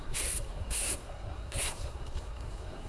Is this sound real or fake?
fake